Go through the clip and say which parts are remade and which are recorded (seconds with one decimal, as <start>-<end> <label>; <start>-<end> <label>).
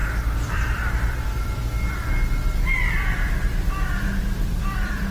0.0-0.5 recorded; 0.5-1.6 remade; 1.6-4.2 recorded; 4.2-5.1 remade